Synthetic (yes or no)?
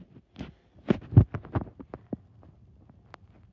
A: no